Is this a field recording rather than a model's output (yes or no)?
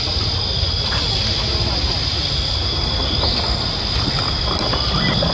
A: yes